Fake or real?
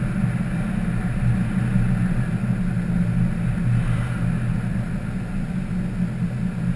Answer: real